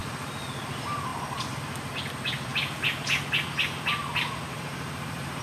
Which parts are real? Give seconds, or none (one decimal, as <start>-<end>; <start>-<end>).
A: 0.0-4.5